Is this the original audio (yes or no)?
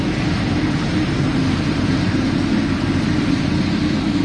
yes